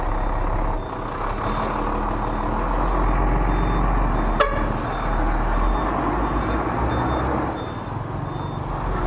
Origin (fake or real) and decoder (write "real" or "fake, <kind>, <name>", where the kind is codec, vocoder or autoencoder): real